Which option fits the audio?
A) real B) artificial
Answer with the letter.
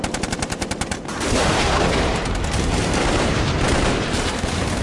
B